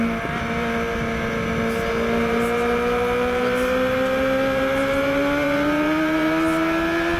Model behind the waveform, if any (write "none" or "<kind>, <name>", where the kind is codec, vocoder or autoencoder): none